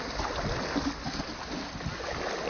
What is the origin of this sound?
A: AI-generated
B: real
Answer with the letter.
B